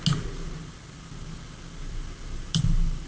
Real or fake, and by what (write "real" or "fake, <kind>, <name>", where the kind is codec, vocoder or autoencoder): real